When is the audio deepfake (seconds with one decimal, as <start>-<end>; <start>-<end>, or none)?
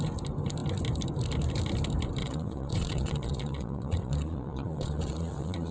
2.2-5.7